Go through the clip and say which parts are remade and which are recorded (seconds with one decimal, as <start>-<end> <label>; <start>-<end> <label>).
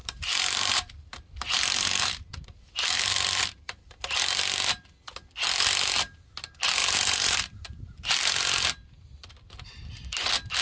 0.0-3.6 remade; 3.6-6.8 recorded; 6.8-8.3 remade; 8.3-10.6 recorded